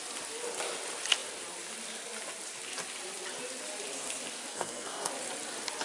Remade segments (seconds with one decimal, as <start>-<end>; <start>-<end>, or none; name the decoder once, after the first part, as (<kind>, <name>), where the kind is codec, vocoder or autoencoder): 4.5-5.1 (codec, SNAC)